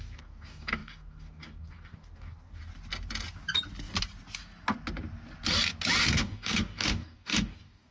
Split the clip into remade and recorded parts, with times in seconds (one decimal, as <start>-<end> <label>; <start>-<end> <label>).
0.0-2.6 remade; 2.6-6.0 recorded; 6.0-7.9 remade